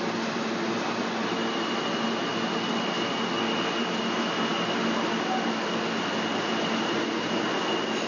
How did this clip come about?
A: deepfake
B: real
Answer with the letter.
B